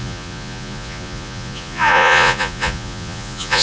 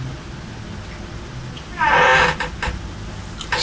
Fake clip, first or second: first